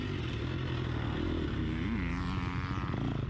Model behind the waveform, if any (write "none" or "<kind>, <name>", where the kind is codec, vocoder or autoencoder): none